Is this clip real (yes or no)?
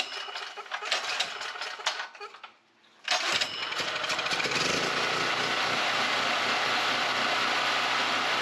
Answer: yes